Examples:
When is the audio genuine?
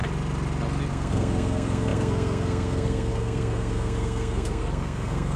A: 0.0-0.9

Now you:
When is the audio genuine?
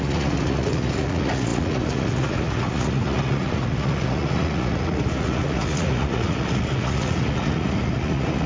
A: none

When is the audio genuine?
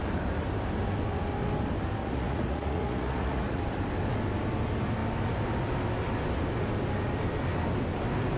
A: 0.0-2.0; 3.6-8.4